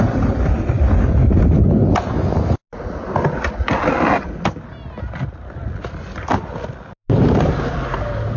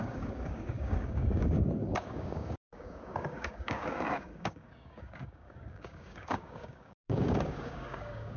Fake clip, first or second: second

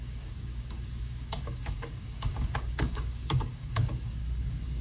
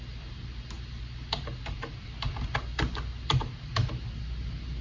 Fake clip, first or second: first